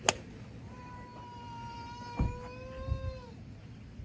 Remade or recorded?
recorded